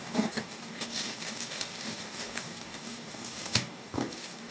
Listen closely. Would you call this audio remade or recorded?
remade